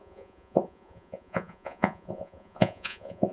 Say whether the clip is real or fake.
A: fake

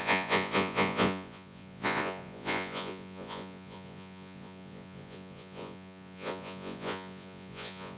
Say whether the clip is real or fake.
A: fake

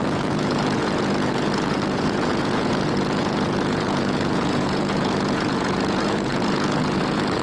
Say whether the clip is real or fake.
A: fake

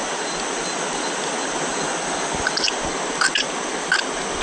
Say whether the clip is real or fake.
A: real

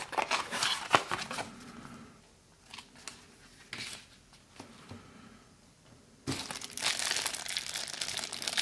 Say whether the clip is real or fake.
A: real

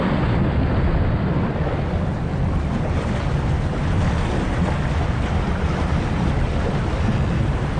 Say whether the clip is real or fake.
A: real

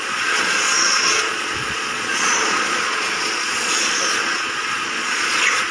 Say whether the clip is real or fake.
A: fake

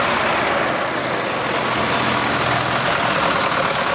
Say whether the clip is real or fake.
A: real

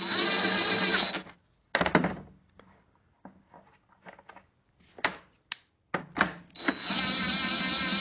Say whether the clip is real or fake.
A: real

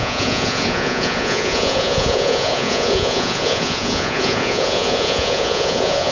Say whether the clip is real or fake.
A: fake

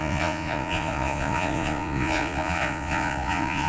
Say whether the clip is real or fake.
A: fake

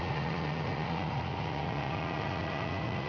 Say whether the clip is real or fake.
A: fake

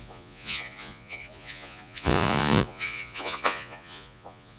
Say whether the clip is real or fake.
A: fake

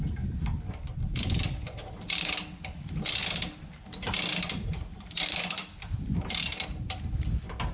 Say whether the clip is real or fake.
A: real